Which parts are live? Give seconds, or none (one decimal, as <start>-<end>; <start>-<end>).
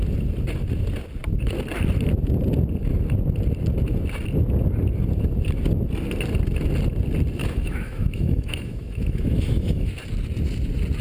0.0-7.4; 9.9-11.0